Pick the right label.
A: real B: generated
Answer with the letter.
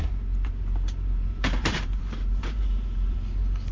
B